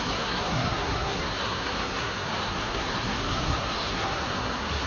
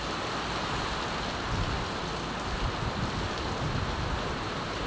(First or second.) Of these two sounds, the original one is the second